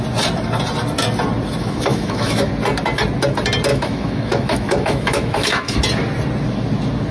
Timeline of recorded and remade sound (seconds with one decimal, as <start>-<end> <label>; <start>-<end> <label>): 0.0-1.6 recorded; 1.6-2.5 remade; 2.5-3.7 recorded; 3.7-5.8 remade; 5.8-7.1 recorded